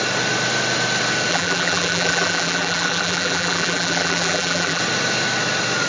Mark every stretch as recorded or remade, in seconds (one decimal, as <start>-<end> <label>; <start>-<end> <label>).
0.0-1.3 recorded; 1.3-4.8 remade; 4.8-5.9 recorded